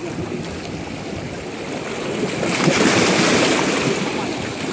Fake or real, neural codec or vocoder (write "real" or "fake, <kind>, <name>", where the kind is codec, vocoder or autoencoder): real